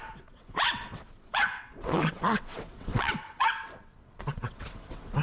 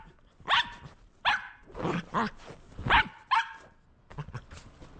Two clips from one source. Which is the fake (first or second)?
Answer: first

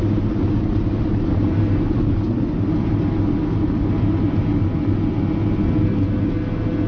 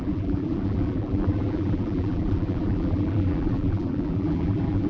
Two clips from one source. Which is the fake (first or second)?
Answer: second